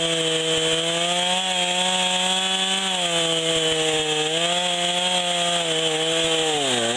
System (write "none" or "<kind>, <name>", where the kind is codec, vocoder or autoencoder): none